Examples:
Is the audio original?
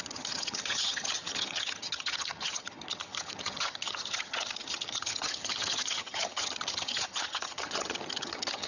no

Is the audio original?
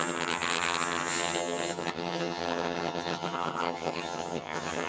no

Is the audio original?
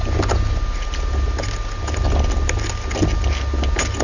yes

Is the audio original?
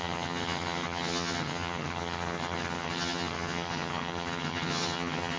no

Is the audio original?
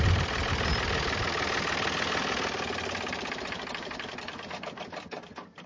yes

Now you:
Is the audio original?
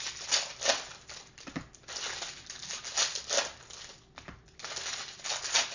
yes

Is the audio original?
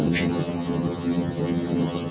no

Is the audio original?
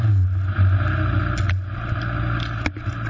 yes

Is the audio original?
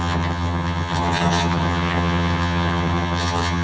no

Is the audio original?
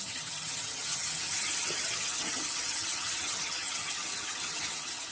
no